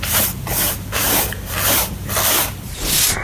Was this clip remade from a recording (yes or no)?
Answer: no